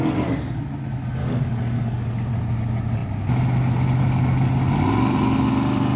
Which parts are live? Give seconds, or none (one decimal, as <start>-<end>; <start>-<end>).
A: 0.0-1.2; 2.3-6.0